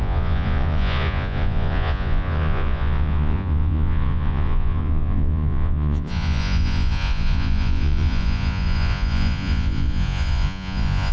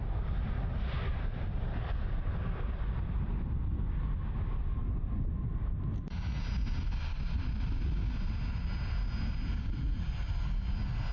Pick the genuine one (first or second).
second